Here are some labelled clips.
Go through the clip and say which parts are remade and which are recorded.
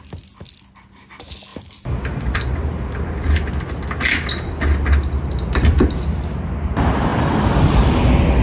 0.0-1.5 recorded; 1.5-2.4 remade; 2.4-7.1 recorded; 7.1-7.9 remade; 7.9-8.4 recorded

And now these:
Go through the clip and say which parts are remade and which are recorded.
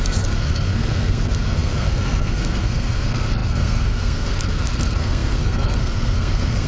0.0-6.7 remade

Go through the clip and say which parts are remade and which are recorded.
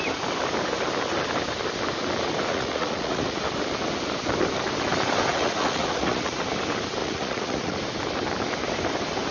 0.0-2.5 recorded; 2.5-3.4 remade; 3.4-5.3 recorded; 5.3-6.4 remade; 6.4-7.0 recorded; 7.0-7.8 remade; 7.8-9.3 recorded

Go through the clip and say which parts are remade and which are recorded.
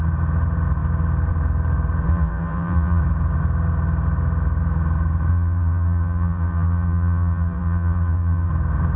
0.0-2.1 recorded; 2.1-3.0 remade; 3.0-5.3 recorded; 5.3-8.5 remade; 8.5-9.0 recorded